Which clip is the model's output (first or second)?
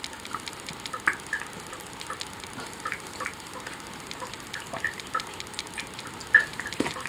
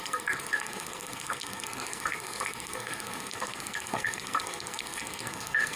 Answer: second